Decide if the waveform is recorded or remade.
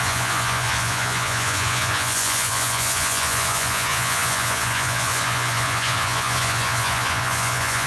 remade